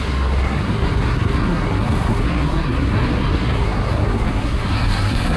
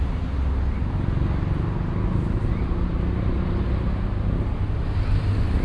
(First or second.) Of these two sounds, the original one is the second